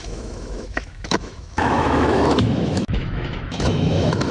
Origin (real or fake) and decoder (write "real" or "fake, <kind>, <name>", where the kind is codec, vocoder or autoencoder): fake, autoencoder, DAC-VAE